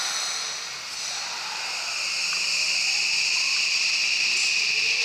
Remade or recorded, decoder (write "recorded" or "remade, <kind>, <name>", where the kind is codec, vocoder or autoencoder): recorded